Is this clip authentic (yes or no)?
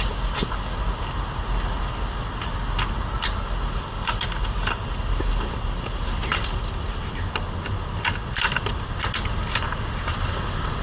yes